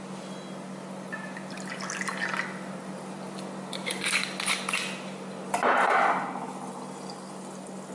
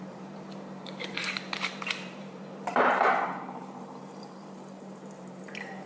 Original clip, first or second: first